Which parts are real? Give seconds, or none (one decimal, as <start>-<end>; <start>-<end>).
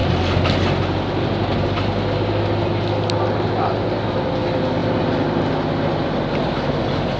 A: 0.0-7.2